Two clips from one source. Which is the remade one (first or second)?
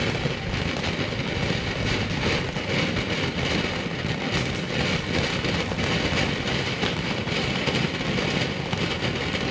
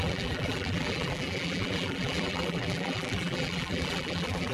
second